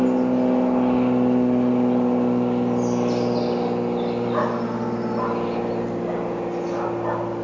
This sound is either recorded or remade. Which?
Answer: recorded